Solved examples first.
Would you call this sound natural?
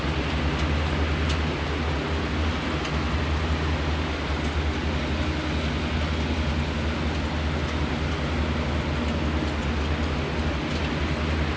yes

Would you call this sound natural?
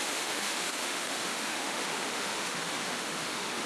no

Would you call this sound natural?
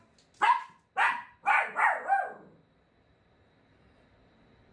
yes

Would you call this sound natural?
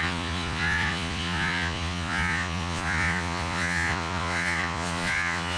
no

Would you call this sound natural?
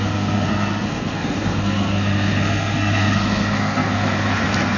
no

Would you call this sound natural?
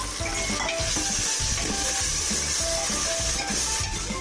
yes